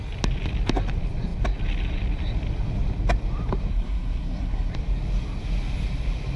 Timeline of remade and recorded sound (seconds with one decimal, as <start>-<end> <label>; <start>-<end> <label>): 0.0-3.7 recorded; 3.7-4.7 remade; 4.7-6.4 recorded